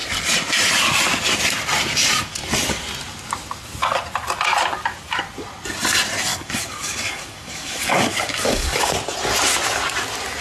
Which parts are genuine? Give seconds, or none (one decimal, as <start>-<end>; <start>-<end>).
0.0-6.3; 8.9-10.4